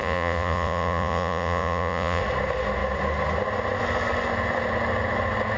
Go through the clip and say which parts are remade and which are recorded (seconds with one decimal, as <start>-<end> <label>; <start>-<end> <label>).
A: 0.0-2.2 remade; 2.2-5.6 recorded